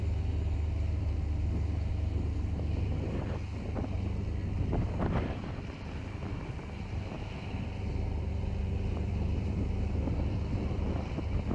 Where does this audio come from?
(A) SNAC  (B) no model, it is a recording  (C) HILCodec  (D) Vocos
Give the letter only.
B